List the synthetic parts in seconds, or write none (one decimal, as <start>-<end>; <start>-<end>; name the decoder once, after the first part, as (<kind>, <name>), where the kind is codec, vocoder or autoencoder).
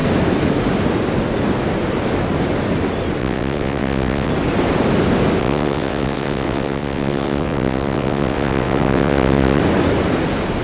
3.2-4.3 (vocoder, WaveNeXt); 5.4-9.6